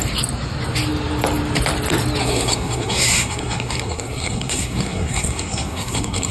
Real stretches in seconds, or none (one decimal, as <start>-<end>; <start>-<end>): 0.0-2.2